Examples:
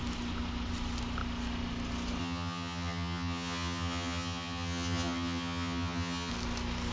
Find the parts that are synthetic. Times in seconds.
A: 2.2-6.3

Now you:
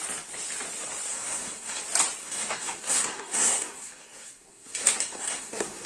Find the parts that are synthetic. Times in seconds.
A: 1.1-1.8; 2.2-5.9

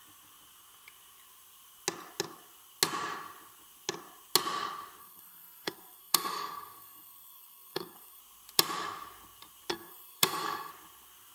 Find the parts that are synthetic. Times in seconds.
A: 5.0-8.2; 9.7-10.7

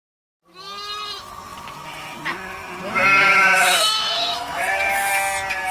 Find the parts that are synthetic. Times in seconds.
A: 3.3-5.1

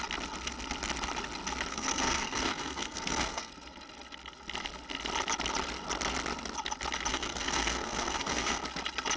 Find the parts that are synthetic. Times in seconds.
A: 1.7-3.5; 7.1-8.6

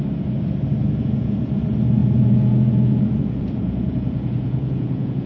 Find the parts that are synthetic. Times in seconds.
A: 0.8-1.6; 2.0-5.3

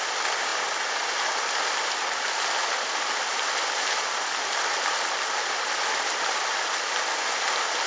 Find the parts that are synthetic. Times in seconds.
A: none

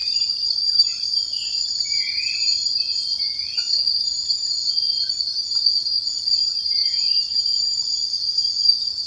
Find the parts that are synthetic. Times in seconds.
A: 0.0-1.8; 6.8-7.9